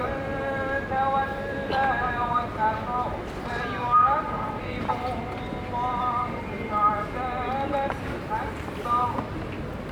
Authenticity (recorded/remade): remade